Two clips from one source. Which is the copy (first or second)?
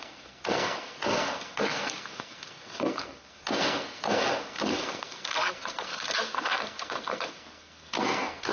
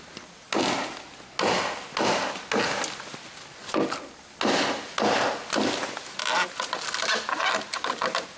first